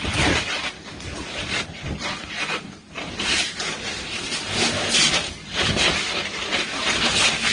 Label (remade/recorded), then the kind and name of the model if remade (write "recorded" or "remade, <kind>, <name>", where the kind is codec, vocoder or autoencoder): remade, vocoder, BigVGAN v2